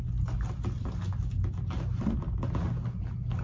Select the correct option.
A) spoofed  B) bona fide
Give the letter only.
B